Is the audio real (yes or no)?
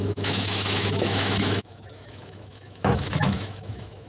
no